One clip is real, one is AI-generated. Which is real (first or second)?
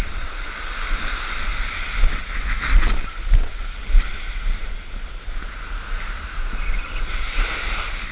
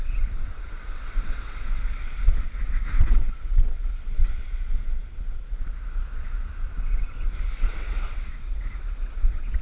first